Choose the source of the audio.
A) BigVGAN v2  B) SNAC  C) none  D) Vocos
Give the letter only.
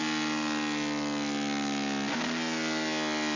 C